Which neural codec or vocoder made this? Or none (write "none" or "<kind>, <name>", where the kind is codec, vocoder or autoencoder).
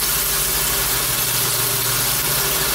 none